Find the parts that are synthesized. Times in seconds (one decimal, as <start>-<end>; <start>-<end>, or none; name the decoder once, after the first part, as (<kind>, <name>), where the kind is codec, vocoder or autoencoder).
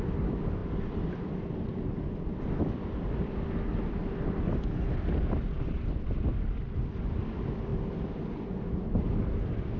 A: 0.6-4.5 (vocoder, BigVGAN v2); 6.6-7.2; 7.7-8.3